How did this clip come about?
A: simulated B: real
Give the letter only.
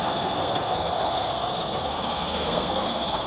A